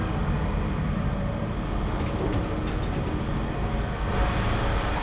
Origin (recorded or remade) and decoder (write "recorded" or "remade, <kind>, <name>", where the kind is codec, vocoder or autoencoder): recorded